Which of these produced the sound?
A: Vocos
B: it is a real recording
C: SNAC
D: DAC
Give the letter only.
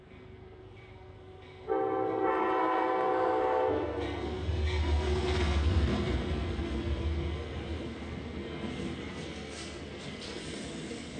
C